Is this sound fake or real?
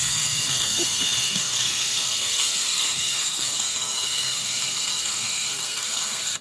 fake